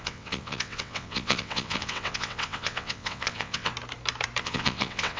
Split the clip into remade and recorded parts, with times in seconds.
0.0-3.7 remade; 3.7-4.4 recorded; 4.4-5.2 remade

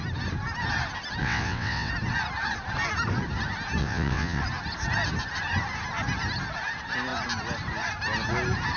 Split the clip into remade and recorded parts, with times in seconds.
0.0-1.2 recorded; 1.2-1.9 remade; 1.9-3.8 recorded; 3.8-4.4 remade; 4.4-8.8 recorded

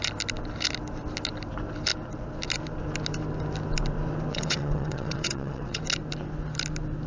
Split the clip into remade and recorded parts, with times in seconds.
0.0-4.3 recorded; 4.3-5.8 remade; 5.8-7.1 recorded

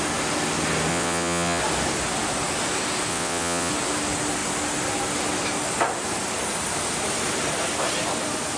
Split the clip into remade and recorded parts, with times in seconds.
0.0-0.9 recorded; 0.9-1.6 remade; 1.6-3.1 recorded; 3.1-3.7 remade; 3.7-8.6 recorded